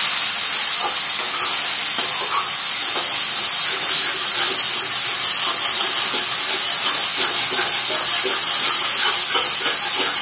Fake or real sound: real